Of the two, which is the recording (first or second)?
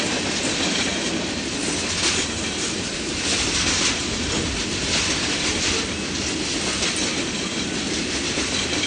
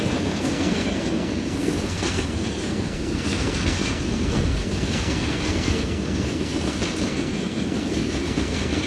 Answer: first